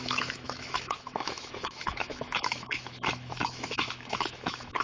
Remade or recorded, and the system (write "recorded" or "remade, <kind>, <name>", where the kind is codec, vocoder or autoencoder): remade, autoencoder, DAC-VAE